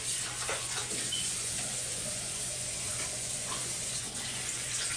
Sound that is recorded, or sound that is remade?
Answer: remade